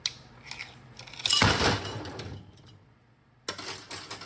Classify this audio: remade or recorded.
recorded